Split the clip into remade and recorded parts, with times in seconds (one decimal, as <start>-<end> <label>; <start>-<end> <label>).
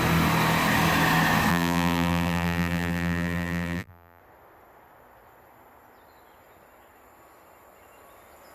0.0-1.5 recorded; 1.5-4.2 remade; 4.2-8.5 recorded